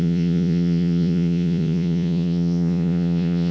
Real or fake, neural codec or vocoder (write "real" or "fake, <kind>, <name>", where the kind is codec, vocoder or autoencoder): fake, vocoder, Vocos